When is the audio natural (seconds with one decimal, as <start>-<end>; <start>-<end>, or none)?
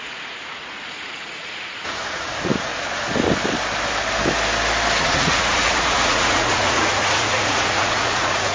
2.7-5.0